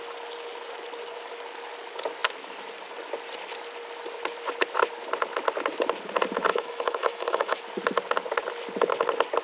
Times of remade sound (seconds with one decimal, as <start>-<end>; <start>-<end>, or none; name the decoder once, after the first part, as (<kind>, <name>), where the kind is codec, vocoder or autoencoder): 6.5-7.6 (autoencoder, DAC-VAE)